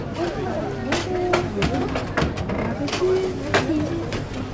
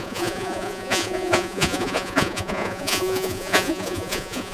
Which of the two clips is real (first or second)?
first